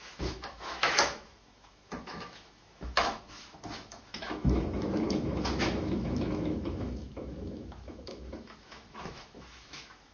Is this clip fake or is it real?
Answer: fake